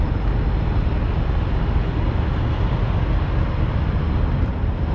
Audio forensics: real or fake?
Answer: real